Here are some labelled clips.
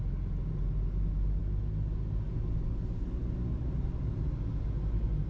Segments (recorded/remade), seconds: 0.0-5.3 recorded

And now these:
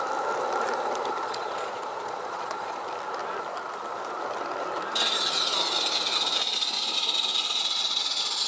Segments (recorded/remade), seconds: 0.0-1.2 recorded; 1.2-2.8 remade; 2.8-7.4 recorded; 7.4-8.5 remade

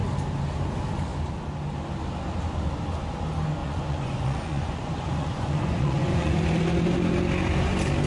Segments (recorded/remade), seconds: 0.0-3.6 recorded; 3.6-6.3 remade; 6.3-8.1 recorded

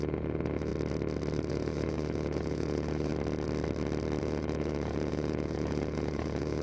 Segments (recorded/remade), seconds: 0.0-0.7 remade; 0.7-1.5 recorded; 1.5-3.1 remade; 3.1-4.2 recorded; 4.2-6.6 remade

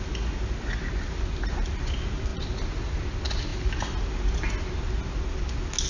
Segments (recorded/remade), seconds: 0.0-5.9 recorded

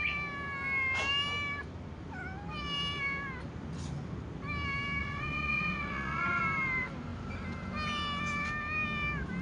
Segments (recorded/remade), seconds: 0.0-5.0 recorded; 5.0-6.4 remade; 6.4-9.4 recorded